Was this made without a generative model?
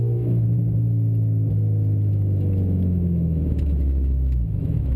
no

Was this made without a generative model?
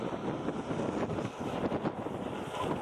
yes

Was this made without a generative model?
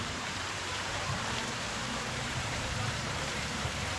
no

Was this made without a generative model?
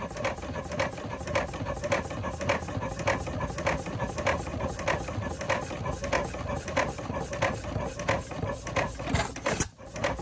yes